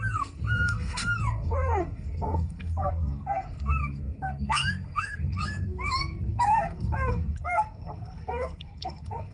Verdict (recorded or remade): remade